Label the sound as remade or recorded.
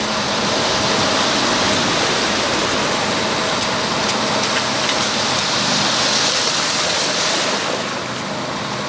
recorded